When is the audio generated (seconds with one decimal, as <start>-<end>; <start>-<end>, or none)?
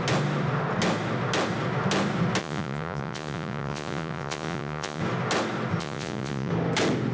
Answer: 2.4-5.0; 5.8-6.5